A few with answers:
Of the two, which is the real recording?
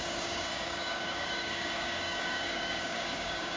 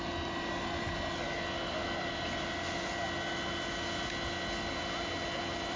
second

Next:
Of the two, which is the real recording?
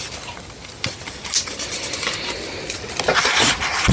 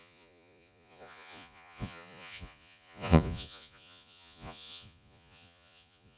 first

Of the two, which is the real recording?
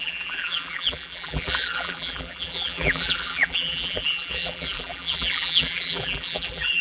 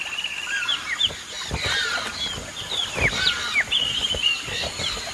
second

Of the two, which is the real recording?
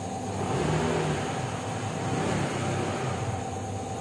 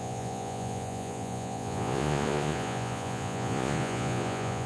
first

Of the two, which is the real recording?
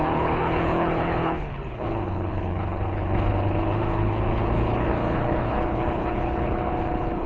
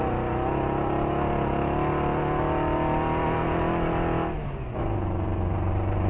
second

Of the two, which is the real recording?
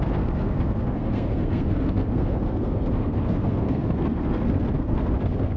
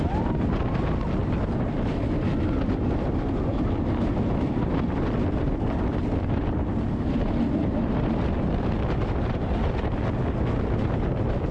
second